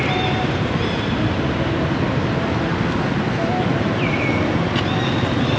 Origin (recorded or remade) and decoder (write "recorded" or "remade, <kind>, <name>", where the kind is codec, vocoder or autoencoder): recorded